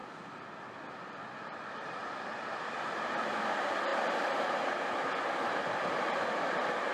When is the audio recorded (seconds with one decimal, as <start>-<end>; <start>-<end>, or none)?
0.0-6.9